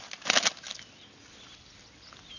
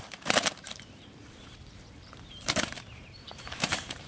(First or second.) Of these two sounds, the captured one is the first